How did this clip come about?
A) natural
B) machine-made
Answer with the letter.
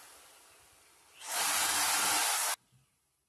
A